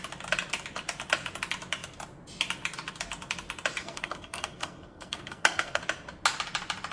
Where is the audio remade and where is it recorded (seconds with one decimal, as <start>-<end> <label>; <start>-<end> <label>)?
0.0-3.8 recorded; 3.8-5.8 remade; 5.8-6.9 recorded